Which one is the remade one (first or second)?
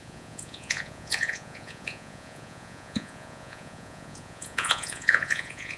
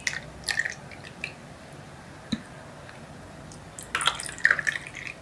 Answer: first